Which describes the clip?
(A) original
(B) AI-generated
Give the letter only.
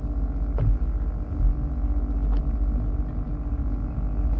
A